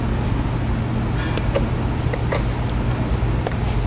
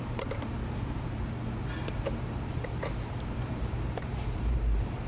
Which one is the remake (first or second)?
second